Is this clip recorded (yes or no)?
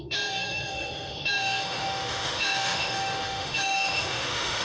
no